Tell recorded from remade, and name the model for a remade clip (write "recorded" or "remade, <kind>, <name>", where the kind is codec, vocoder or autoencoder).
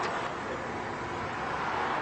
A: recorded